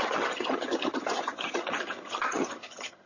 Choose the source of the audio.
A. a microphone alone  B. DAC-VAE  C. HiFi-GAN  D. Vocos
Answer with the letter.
C